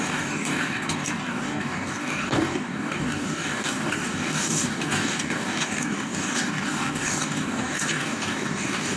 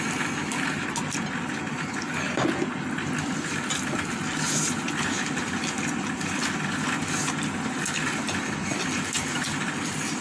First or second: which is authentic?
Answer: second